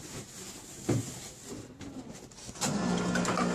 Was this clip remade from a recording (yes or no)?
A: no